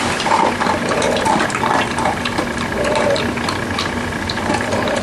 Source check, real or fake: real